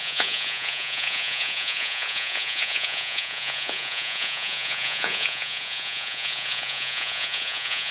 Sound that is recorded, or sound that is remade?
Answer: remade